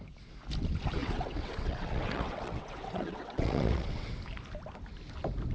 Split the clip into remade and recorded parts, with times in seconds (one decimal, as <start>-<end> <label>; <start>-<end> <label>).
0.0-1.0 recorded; 1.0-4.1 remade; 4.1-5.5 recorded